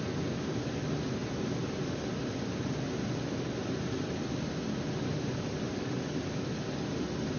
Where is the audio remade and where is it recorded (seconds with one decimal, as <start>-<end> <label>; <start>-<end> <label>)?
0.0-7.4 recorded